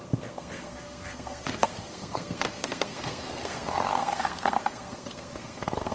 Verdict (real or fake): fake